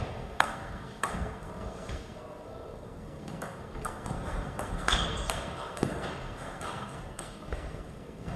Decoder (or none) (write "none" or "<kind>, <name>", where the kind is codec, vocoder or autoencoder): codec, SNAC